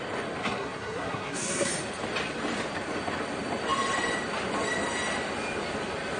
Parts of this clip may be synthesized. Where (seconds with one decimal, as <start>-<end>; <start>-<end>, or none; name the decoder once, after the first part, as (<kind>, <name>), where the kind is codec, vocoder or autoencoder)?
0.4-1.7 (codec, SNAC)